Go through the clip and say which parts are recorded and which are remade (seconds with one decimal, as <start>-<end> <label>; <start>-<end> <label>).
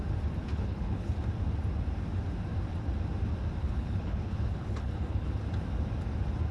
0.0-0.5 recorded; 0.5-1.1 remade; 1.1-3.6 recorded; 3.6-5.3 remade; 5.3-6.5 recorded